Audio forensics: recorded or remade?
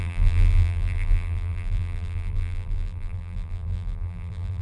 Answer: remade